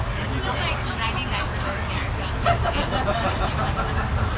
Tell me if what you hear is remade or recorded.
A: recorded